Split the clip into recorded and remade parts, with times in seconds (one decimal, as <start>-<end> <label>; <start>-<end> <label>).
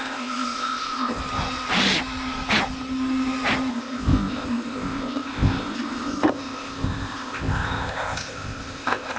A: 0.0-1.2 remade; 1.2-3.7 recorded; 3.7-9.2 remade